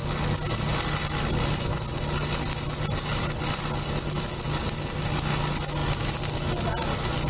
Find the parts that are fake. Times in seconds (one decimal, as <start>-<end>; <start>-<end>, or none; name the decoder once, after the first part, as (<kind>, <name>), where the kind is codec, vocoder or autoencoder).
none